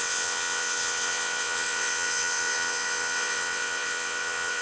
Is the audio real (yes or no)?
no